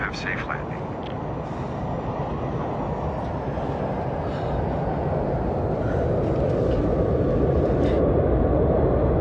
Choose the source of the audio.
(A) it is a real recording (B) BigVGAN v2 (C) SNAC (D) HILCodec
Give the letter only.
A